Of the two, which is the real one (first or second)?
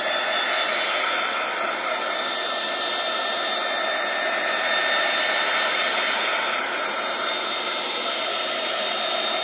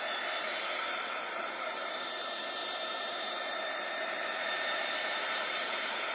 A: first